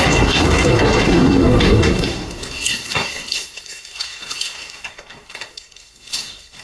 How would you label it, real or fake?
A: fake